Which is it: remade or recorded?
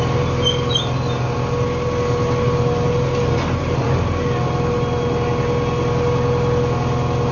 recorded